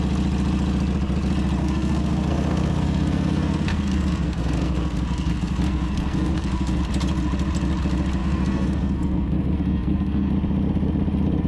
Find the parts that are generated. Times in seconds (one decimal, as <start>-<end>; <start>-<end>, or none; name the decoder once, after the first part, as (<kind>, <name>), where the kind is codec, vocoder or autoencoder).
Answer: 1.6-6.8 (codec, SNAC); 8.2-10.3